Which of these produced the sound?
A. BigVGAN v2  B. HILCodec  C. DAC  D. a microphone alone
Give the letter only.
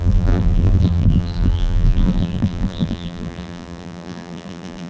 A